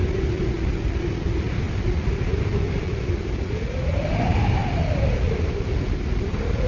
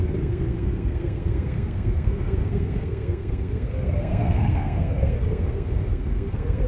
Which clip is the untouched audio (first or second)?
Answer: first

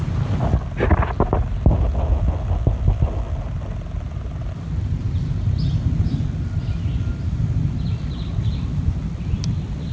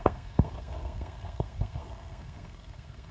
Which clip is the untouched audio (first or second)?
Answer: first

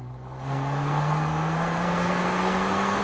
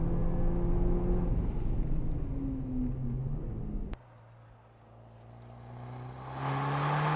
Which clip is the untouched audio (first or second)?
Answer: second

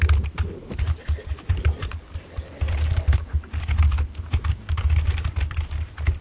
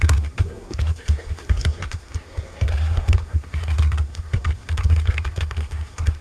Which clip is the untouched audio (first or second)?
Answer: first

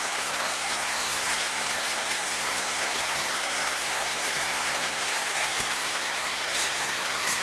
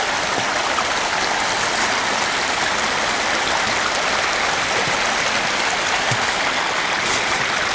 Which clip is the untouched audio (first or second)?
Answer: second